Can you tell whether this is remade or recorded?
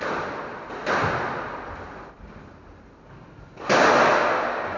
recorded